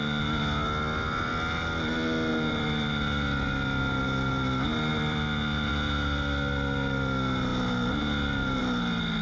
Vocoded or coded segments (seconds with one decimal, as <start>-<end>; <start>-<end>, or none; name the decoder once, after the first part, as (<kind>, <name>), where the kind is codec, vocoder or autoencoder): 4.9-5.7 (vocoder, BigVGAN v2)